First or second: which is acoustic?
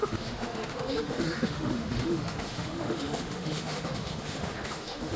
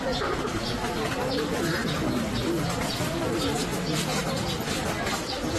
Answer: second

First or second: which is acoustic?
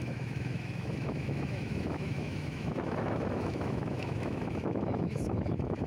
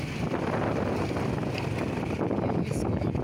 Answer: second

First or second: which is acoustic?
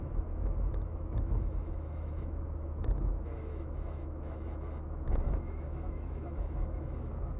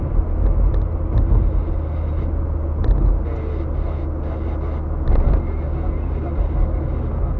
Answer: second